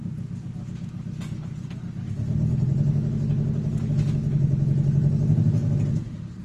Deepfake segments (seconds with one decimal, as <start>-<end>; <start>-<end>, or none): none